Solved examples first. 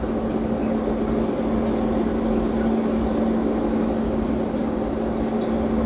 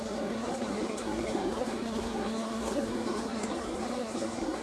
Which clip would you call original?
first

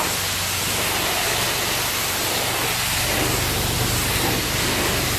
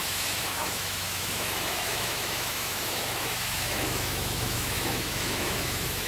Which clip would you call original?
first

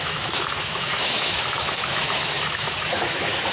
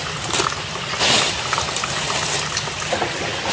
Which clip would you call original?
second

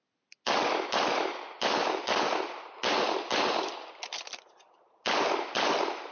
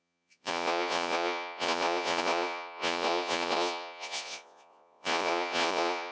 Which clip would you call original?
first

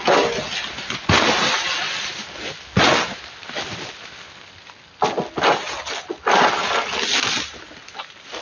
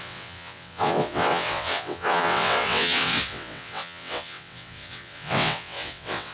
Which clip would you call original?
first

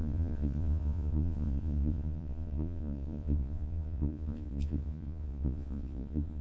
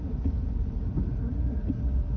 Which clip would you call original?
second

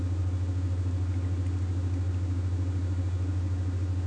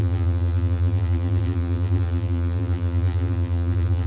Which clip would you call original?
first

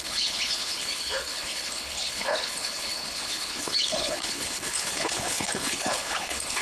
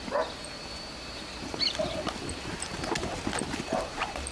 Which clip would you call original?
second